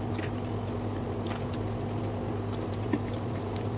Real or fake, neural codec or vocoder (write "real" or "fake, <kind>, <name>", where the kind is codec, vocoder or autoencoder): real